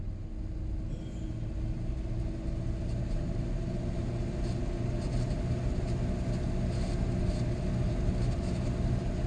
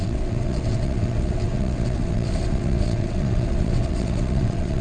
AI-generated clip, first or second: second